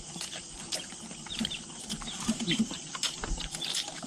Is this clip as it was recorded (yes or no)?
no